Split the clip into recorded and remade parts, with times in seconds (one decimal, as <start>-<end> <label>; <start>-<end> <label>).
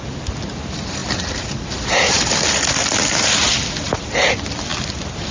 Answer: 0.0-5.3 recorded